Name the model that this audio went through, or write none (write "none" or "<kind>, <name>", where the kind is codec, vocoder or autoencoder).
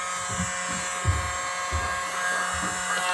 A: none